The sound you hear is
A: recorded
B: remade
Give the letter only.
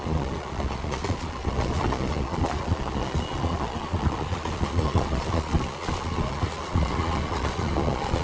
B